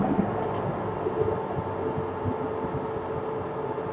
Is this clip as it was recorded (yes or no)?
yes